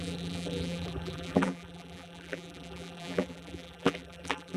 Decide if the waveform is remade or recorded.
remade